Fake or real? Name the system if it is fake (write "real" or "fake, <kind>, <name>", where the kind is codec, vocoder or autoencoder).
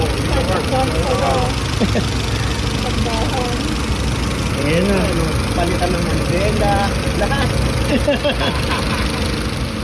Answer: real